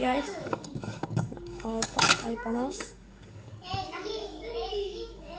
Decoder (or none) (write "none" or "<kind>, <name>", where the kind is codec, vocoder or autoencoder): codec, DAC